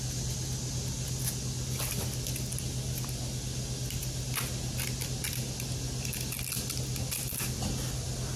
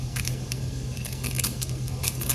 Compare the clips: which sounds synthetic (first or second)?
second